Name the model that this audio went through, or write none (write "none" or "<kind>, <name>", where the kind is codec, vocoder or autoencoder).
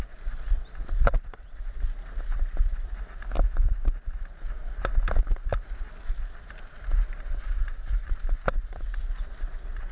none